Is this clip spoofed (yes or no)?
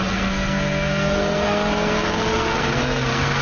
yes